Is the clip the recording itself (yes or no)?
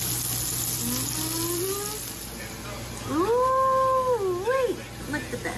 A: yes